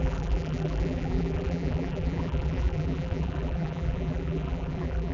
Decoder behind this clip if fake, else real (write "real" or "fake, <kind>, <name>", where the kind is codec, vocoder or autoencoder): fake, vocoder, BigVGAN v2